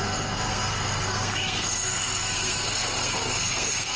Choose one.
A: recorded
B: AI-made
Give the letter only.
B